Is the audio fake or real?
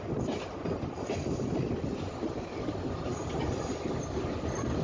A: real